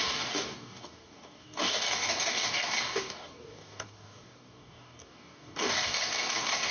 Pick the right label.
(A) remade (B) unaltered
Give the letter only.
A